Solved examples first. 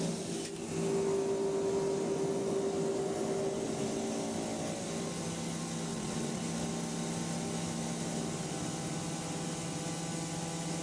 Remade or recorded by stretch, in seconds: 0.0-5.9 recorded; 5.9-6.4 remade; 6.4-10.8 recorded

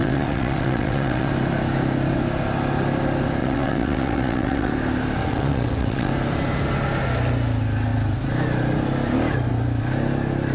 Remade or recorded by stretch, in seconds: 0.0-1.3 remade; 1.3-3.4 recorded; 3.4-4.7 remade; 4.7-5.2 recorded; 5.2-6.1 remade; 6.1-10.5 recorded

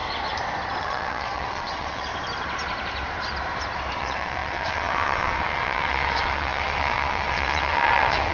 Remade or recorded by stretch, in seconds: 0.0-0.8 recorded; 0.8-2.1 remade; 2.1-4.0 recorded; 4.0-8.3 remade

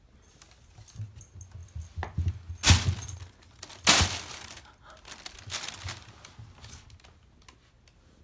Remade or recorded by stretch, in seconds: 0.0-8.2 recorded

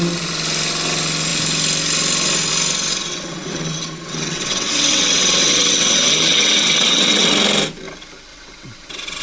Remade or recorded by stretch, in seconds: 0.0-3.1 recorded; 3.1-7.3 remade; 7.3-8.3 recorded; 8.3-9.2 remade

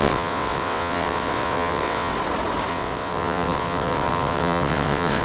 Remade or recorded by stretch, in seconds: 0.0-2.1 remade; 2.1-2.7 recorded; 2.7-5.2 remade

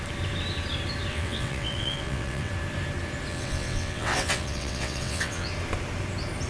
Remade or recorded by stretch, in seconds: 0.0-1.1 recorded; 1.1-2.5 remade; 2.5-3.3 recorded; 3.3-5.5 remade; 5.5-6.5 recorded

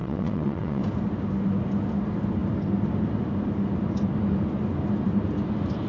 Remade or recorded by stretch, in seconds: 0.0-0.8 remade; 0.8-5.9 recorded